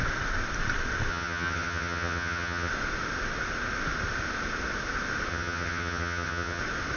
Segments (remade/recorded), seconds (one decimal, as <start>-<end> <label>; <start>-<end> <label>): 0.0-1.1 recorded; 1.1-2.7 remade; 2.7-5.3 recorded; 5.3-6.6 remade; 6.6-7.0 recorded